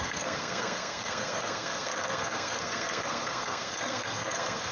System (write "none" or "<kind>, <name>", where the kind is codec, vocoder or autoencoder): codec, SNAC